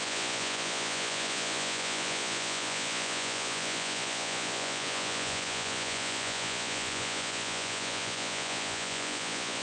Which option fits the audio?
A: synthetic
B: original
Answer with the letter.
A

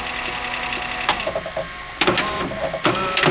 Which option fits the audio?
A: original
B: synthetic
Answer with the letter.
A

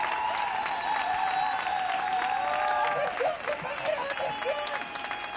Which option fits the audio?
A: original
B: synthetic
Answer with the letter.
A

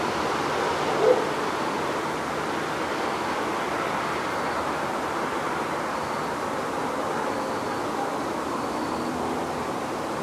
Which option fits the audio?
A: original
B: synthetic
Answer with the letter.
A